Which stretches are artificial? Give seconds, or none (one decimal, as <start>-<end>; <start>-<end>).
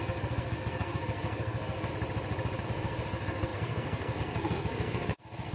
0.0-1.9; 2.6-5.5